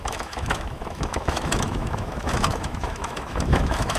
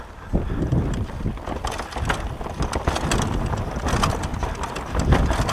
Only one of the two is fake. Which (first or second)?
first